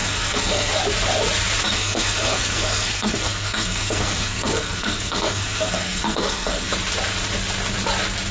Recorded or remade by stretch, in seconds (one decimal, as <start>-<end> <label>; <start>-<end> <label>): 0.0-0.7 remade; 0.7-1.7 recorded; 1.7-6.7 remade; 6.7-8.3 recorded